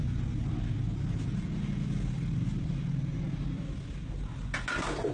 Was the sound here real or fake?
real